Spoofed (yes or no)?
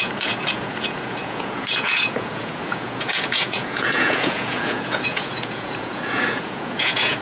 yes